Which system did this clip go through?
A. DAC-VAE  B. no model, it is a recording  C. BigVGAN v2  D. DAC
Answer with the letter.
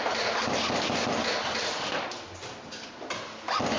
B